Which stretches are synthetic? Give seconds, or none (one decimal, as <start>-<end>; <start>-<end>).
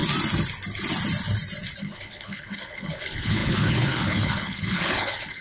1.8-5.4